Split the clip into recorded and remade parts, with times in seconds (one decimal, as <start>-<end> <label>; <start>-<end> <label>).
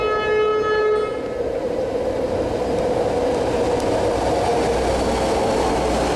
0.0-6.2 recorded